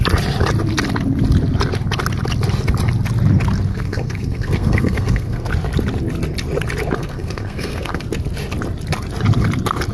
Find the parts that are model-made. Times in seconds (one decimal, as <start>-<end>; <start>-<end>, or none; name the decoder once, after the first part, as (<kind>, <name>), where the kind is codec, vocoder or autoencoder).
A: 3.7-5.5 (codec, SNAC); 7.0-8.0